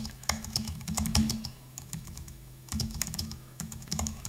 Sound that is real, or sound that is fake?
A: fake